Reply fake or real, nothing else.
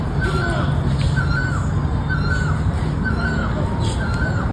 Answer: real